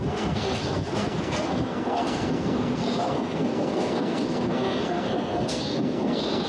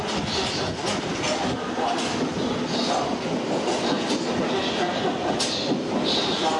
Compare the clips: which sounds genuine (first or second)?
second